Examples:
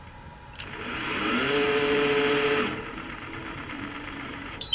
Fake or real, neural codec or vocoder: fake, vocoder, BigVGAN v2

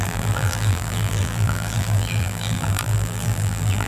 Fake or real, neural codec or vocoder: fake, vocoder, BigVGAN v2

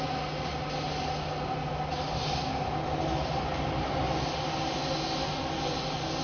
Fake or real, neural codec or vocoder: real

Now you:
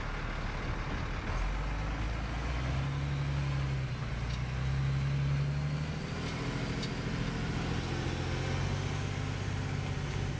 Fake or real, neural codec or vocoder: real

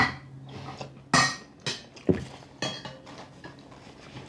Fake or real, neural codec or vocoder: real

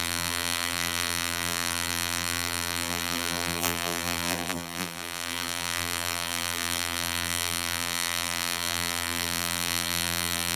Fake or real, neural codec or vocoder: fake, vocoder, BigVGAN v2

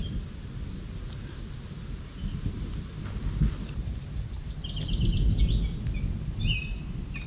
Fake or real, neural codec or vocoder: real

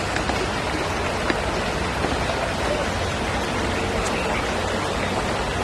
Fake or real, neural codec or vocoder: real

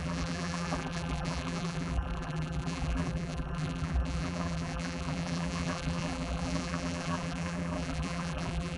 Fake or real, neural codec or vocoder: fake, vocoder, BigVGAN v2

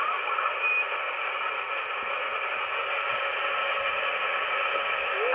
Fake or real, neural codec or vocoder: real